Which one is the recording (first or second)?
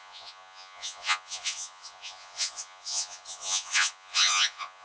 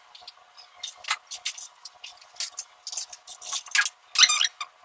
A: second